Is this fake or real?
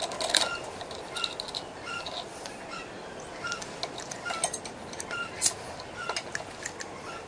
real